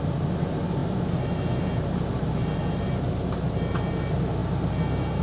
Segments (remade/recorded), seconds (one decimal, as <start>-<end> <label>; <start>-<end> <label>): 0.0-5.2 recorded